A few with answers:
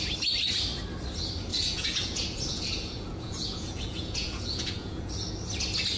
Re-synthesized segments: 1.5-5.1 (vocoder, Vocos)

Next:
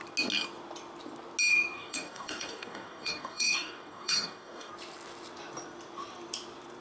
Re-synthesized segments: 1.5-4.7 (codec, DAC)

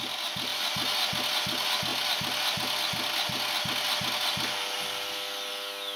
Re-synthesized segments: none

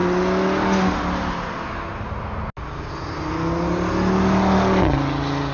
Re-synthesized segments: none

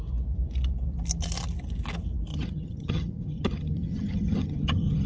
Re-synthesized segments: 2.3-5.1 (vocoder, HiFi-GAN)

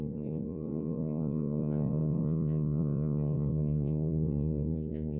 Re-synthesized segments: 0.0-5.2 (vocoder, Vocos)

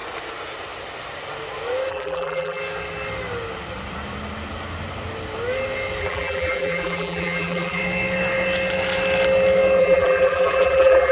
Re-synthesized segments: 1.9-2.6 (vocoder, BigVGAN v2); 6.0-7.8; 9.8-11.1